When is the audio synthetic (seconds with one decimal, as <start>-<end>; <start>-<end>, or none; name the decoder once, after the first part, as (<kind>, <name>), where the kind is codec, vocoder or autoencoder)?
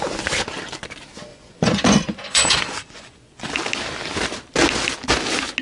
1.3-3.5 (vocoder, Vocos)